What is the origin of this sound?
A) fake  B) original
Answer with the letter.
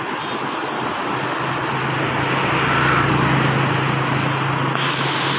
B